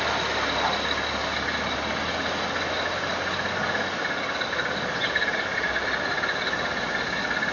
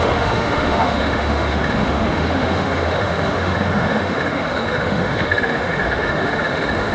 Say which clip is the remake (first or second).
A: second